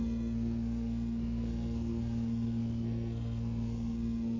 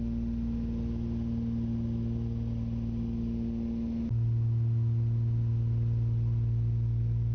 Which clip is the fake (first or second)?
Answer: first